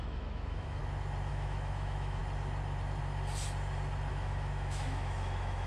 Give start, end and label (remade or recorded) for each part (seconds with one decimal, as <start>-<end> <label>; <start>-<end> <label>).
0.0-0.8 remade; 0.8-1.3 recorded; 1.3-2.2 remade; 2.2-4.1 recorded; 4.1-5.7 remade